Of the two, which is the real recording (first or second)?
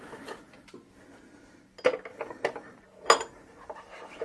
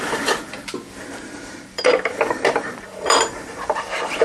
first